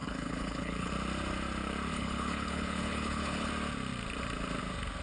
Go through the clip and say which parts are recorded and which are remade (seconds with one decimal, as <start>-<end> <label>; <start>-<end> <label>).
0.0-0.9 remade; 0.9-1.9 recorded; 1.9-3.5 remade; 3.5-5.0 recorded